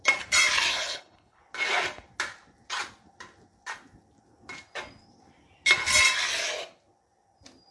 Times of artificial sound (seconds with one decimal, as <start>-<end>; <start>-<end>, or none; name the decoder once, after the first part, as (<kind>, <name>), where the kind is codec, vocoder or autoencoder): 0.7-1.4 (codec, HILCodec)